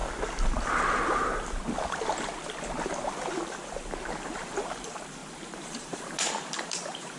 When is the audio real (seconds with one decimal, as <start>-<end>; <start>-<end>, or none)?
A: 0.0-4.3

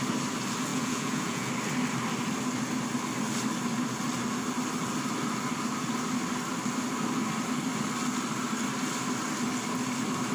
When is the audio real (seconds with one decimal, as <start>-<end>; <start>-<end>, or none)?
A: 0.0-0.7; 1.5-10.3